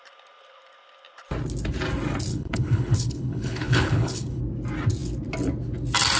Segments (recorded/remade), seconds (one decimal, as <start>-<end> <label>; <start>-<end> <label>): 0.0-2.3 recorded; 2.3-4.4 remade; 4.4-6.2 recorded